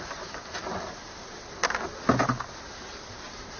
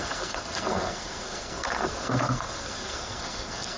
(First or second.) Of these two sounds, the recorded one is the first